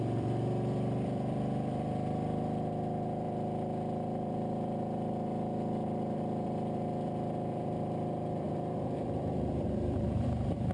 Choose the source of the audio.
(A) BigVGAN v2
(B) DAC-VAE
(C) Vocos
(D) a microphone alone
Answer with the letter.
A